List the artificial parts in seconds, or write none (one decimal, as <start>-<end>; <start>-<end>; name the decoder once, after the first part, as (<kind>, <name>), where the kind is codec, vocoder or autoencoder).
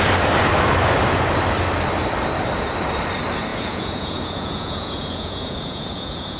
3.5-6.4 (vocoder, Vocos)